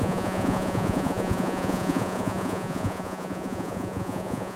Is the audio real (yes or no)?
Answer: no